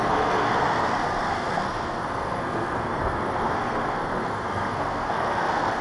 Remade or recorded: remade